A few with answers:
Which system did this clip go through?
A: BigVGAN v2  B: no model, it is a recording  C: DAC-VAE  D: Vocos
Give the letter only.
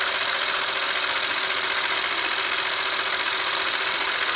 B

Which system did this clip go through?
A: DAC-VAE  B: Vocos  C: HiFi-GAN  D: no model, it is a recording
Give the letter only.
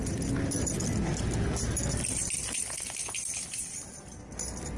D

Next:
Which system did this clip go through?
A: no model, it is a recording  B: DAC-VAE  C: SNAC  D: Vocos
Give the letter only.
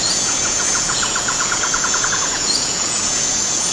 D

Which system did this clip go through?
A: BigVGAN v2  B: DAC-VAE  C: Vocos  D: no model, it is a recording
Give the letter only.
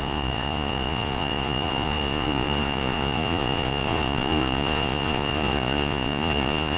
C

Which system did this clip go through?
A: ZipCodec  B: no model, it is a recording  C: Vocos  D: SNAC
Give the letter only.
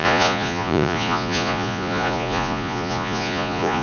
C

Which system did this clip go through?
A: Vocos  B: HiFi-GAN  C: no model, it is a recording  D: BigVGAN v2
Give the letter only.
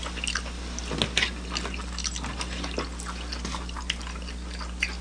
C